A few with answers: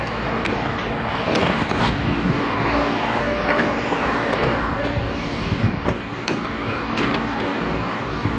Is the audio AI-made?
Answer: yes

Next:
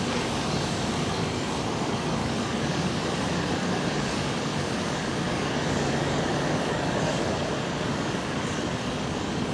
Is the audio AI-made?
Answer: yes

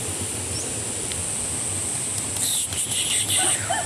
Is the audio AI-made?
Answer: no